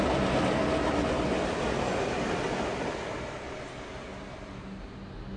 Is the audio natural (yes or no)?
yes